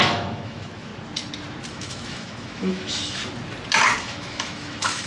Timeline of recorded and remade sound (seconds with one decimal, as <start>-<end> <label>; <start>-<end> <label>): 0.0-0.9 remade; 0.9-1.7 recorded; 1.7-3.2 remade; 3.2-4.0 recorded; 4.0-5.1 remade